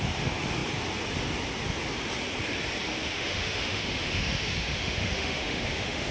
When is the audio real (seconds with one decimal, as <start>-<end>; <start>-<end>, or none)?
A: 0.0-2.9